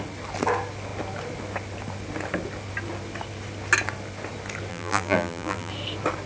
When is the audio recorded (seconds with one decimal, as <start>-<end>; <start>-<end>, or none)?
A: 0.0-4.7; 5.7-6.3